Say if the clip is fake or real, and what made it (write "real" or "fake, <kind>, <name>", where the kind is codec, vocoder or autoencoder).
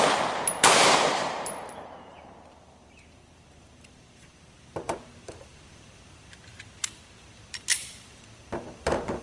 fake, vocoder, BigVGAN v2